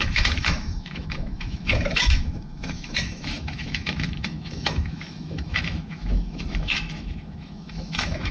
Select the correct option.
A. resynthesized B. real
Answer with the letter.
A